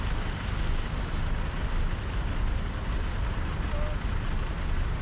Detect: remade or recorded recorded